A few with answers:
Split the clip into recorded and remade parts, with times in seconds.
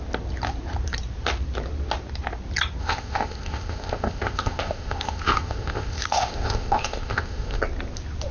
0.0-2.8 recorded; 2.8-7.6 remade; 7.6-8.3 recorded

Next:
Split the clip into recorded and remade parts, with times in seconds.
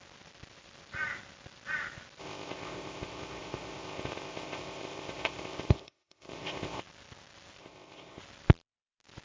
0.0-2.2 recorded; 2.2-6.8 remade; 6.8-7.6 recorded; 7.6-8.2 remade; 8.2-9.2 recorded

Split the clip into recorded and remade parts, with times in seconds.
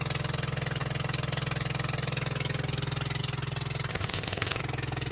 0.0-3.9 recorded; 3.9-4.6 remade; 4.6-5.1 recorded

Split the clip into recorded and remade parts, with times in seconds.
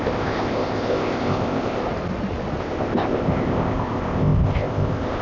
0.0-1.8 remade; 1.8-2.6 recorded; 2.6-5.2 remade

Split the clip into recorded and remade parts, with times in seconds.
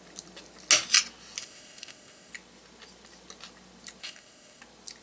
0.0-1.4 recorded; 1.4-2.3 remade; 2.3-4.0 recorded; 4.0-4.6 remade; 4.6-5.0 recorded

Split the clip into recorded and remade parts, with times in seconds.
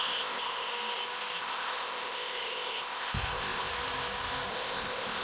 0.0-0.7 remade; 0.7-1.4 recorded; 1.4-3.7 remade; 3.7-4.5 recorded; 4.5-5.2 remade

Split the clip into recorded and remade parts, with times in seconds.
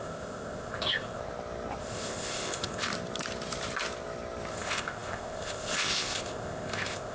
0.0-1.2 remade; 1.2-1.8 recorded; 1.8-2.9 remade; 2.9-4.5 recorded; 4.5-7.1 remade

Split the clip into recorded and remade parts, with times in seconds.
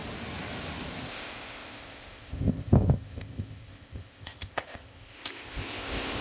0.0-1.1 recorded; 1.1-6.2 remade